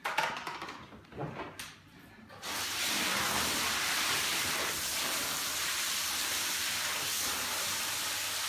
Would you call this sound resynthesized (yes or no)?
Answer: no